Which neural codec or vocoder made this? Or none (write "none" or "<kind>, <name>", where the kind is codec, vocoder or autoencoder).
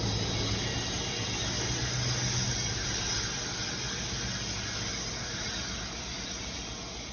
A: none